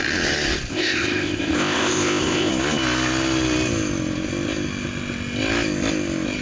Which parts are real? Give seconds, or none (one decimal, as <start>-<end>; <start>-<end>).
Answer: 0.0-0.7; 2.5-6.4